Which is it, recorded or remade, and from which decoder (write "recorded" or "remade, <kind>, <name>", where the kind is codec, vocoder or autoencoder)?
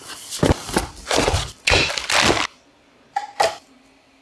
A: recorded